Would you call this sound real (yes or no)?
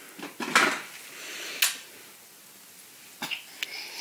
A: yes